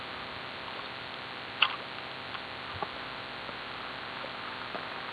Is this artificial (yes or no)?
no